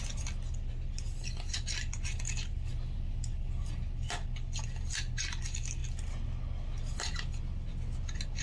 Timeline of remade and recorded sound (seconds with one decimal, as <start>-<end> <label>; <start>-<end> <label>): 0.0-8.4 recorded